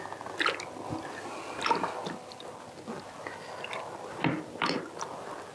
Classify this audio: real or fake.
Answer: real